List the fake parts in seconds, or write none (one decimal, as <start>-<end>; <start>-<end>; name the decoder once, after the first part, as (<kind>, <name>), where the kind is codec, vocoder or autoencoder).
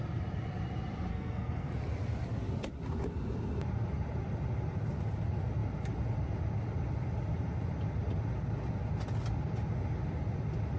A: 1.1-1.7 (codec, SNAC)